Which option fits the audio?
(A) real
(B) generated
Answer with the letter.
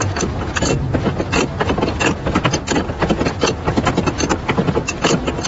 A